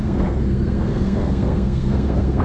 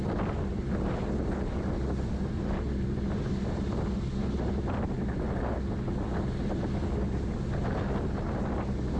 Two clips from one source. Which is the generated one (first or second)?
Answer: first